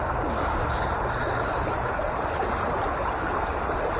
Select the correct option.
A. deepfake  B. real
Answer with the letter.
B